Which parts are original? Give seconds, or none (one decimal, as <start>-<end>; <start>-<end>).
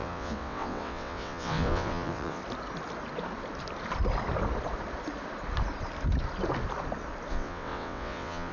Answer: 2.4-7.3